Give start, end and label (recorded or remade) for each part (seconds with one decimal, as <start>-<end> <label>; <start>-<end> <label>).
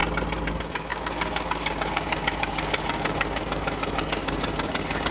0.0-0.5 recorded; 0.5-5.1 remade